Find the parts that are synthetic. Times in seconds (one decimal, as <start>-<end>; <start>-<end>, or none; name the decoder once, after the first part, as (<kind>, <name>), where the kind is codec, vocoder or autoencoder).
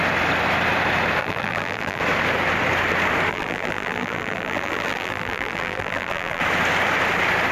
1.2-2.0 (vocoder, BigVGAN v2); 3.3-6.4